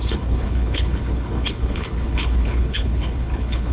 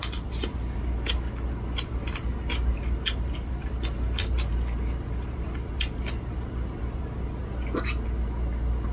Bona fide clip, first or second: second